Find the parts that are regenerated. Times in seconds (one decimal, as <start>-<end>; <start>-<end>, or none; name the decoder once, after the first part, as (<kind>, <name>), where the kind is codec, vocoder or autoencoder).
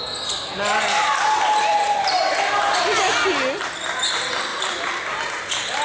1.8-2.8 (vocoder, BigVGAN v2); 4.5-5.8